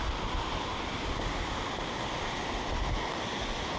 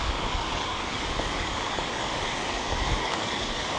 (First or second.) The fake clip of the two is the second